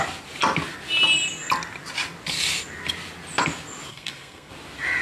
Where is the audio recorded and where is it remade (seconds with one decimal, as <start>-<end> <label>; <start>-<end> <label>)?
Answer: 0.0-3.9 recorded; 3.9-4.5 remade; 4.5-5.0 recorded